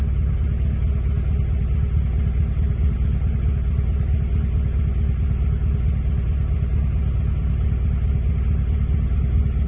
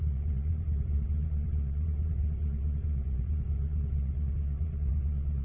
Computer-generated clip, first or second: second